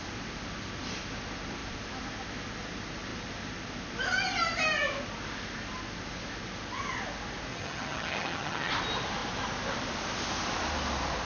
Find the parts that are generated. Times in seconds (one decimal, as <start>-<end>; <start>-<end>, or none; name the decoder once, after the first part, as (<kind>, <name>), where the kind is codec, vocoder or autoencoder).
7.5-8.7 (vocoder, HiFi-GAN)